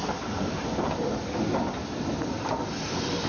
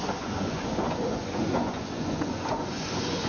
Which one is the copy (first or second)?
second